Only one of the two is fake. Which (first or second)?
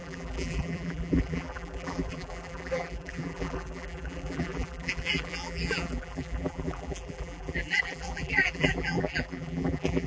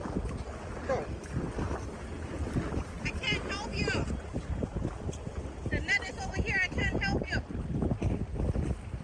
first